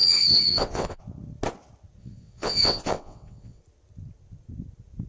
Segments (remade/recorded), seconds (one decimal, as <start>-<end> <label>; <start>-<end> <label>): 0.0-1.0 remade; 1.0-2.0 recorded; 2.0-3.6 remade; 3.6-5.1 recorded